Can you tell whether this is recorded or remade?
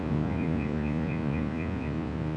remade